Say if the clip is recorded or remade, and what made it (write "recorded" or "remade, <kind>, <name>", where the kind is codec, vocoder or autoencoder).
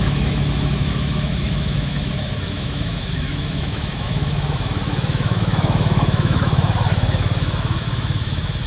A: remade, autoencoder, DAC-VAE